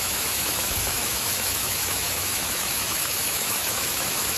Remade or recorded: remade